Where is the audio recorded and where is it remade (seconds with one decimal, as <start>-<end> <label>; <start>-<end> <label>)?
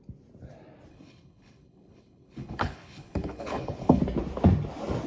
0.0-0.9 recorded; 0.9-4.0 remade; 4.0-5.1 recorded